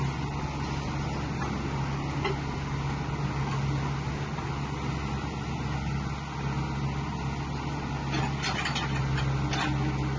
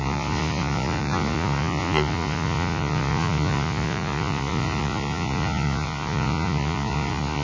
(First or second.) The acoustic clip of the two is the first